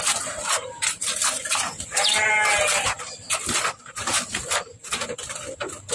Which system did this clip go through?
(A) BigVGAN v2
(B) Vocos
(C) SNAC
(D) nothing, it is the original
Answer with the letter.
D